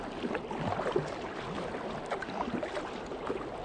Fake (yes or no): no